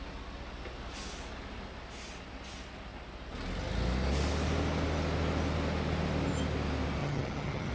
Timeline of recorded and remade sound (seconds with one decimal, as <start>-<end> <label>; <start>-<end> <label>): 0.0-7.0 recorded; 7.0-7.7 remade